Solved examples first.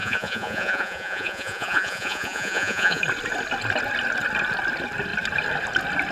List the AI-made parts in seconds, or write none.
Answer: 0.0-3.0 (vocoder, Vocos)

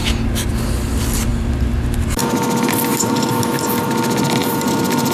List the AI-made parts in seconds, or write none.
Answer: 1.3-2.2 (vocoder, BigVGAN v2); 2.9-3.4; 4.4-5.1

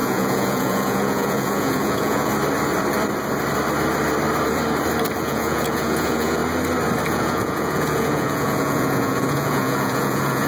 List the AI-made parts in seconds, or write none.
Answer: 0.0-2.3 (vocoder, Vocos); 5.2-6.4; 7.1-10.5

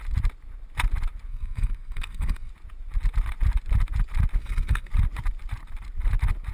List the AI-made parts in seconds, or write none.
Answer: 1.3-2.5 (codec, SNAC); 4.4-4.9

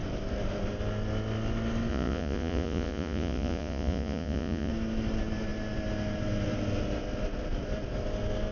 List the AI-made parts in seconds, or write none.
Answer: 1.9-4.7 (vocoder, Vocos)